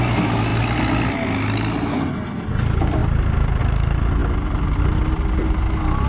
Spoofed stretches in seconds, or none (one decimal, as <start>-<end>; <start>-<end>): 3.0-3.6